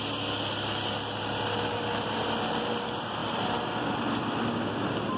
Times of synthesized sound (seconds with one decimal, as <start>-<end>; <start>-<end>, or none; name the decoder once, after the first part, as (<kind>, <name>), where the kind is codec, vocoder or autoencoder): none